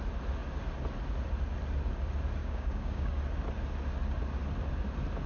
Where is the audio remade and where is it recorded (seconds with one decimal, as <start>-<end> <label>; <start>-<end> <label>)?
0.0-2.4 recorded; 2.4-3.2 remade; 3.2-5.3 recorded